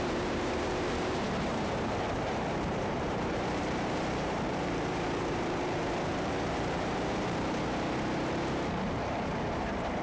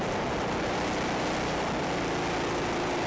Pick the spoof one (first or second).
first